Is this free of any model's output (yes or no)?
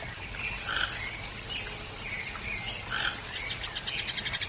yes